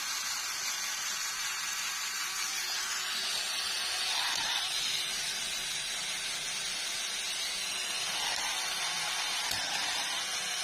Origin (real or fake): real